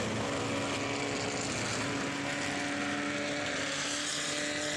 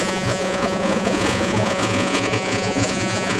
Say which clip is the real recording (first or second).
first